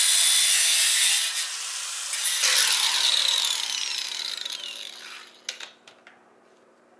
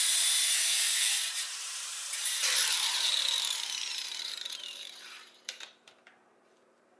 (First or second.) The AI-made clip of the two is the second